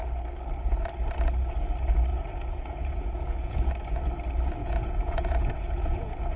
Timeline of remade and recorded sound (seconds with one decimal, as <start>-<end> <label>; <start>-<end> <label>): 0.0-2.1 recorded; 2.1-3.7 remade; 3.7-4.6 recorded; 4.6-6.4 remade